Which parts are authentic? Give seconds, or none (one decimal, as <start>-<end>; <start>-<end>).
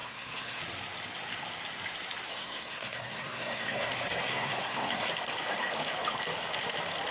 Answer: 0.6-2.3; 3.9-4.3; 5.1-7.1